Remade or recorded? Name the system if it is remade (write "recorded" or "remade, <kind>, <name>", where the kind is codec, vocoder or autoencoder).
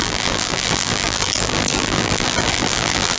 remade, vocoder, BigVGAN v2